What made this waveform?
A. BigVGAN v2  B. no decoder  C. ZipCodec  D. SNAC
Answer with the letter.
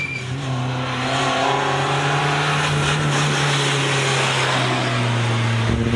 B